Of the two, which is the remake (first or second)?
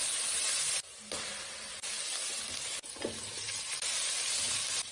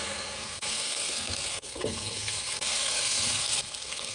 second